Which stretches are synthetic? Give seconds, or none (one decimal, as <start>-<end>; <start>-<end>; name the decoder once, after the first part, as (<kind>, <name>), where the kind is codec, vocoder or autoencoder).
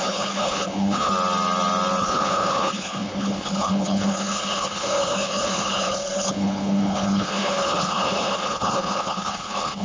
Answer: 0.0-1.1 (codec, HILCodec); 2.0-9.8